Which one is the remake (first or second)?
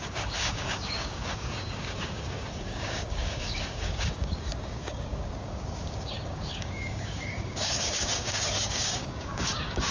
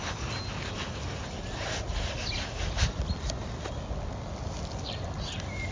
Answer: first